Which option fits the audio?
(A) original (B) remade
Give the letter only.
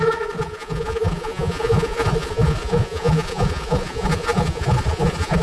B